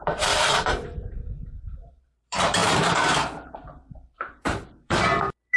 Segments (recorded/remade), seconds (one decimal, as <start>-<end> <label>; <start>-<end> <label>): 0.0-5.6 remade